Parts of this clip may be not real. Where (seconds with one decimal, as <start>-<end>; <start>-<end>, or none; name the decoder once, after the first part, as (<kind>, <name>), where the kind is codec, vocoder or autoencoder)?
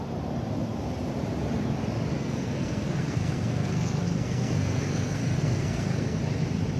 2.1-6.2 (codec, SNAC)